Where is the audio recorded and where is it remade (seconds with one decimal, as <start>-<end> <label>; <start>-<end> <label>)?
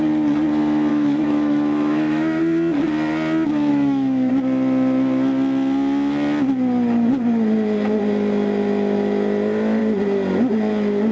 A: 0.0-0.9 recorded; 0.9-2.4 remade; 2.4-3.7 recorded; 3.7-4.3 remade; 4.3-11.1 recorded